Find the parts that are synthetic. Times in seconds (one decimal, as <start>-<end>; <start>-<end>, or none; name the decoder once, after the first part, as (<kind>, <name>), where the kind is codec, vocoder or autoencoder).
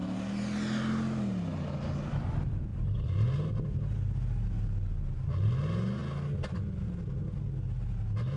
none